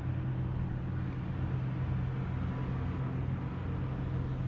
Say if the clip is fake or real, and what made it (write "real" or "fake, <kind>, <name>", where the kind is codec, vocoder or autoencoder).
real